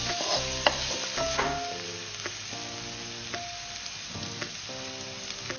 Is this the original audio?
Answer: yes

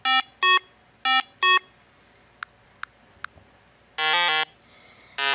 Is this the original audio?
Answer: yes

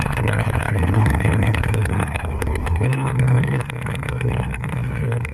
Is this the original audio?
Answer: no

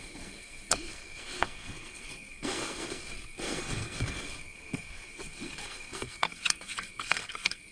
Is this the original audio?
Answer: no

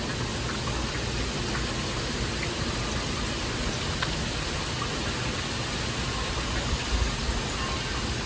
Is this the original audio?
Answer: yes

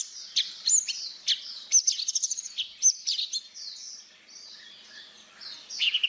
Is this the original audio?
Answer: yes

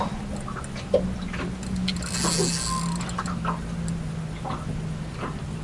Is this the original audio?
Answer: yes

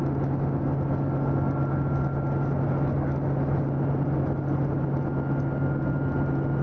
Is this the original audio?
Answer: yes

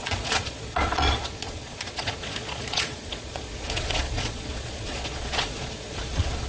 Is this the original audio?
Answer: no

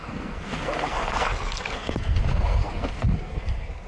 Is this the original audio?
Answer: no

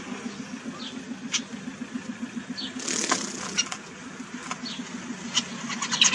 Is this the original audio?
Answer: yes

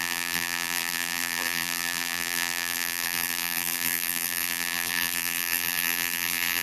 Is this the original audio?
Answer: no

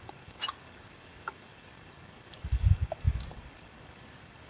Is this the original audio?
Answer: no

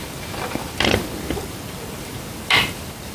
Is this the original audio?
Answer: no